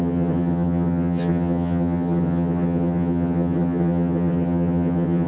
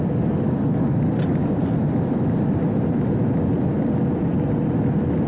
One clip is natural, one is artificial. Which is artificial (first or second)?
first